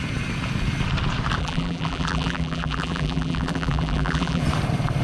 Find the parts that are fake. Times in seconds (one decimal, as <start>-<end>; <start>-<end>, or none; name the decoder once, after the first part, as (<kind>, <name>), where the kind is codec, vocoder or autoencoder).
1.4-4.4 (vocoder, BigVGAN v2)